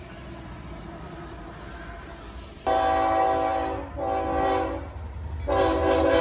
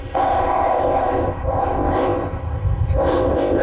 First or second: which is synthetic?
second